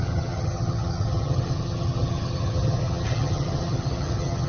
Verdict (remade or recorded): remade